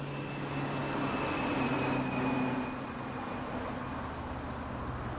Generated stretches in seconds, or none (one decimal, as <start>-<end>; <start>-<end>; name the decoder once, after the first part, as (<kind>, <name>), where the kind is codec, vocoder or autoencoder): none